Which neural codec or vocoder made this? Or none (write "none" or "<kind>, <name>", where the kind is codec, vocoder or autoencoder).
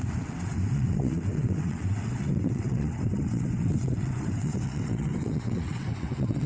vocoder, WaveNeXt